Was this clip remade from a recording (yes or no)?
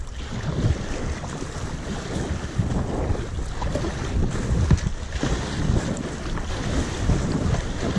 no